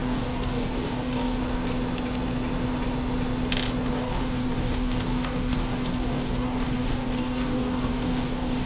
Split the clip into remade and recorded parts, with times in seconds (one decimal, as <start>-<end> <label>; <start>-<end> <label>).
0.0-1.4 remade; 1.4-3.9 recorded; 3.9-8.7 remade